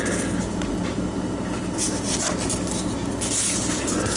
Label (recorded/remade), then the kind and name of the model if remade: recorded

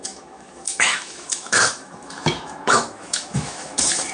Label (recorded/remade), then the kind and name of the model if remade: remade, autoencoder, DAC-VAE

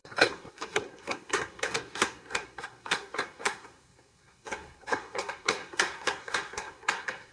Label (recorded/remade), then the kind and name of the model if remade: remade, codec, SNAC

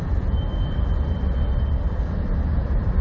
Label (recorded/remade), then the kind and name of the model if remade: recorded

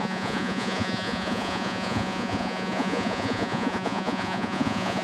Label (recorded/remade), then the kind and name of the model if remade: remade, vocoder, Vocos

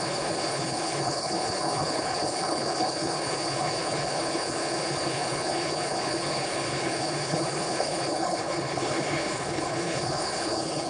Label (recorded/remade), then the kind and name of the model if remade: remade, codec, HILCodec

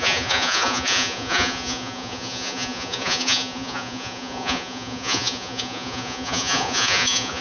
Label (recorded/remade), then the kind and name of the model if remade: remade, vocoder, Vocos